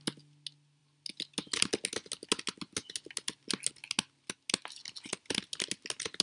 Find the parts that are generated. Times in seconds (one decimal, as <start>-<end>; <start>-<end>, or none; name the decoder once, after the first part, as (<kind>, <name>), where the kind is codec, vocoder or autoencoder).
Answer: none